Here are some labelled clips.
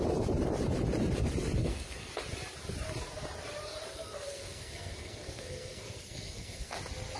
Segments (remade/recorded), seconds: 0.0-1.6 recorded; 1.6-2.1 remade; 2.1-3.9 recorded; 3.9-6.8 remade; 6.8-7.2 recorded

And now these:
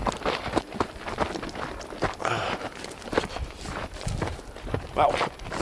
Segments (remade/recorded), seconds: 0.0-2.3 recorded; 2.3-5.6 remade

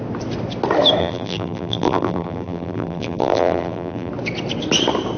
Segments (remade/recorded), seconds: 0.0-1.0 recorded; 1.0-4.1 remade; 4.1-5.2 recorded

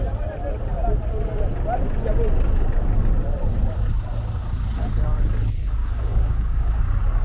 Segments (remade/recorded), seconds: 0.0-5.8 recorded; 5.8-6.8 remade; 6.8-7.2 recorded

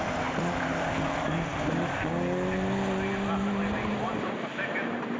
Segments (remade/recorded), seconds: 0.0-5.2 recorded

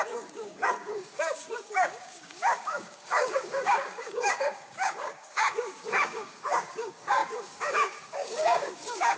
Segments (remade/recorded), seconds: 0.0-9.2 remade

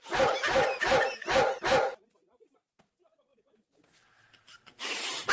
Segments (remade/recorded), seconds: 0.0-5.3 recorded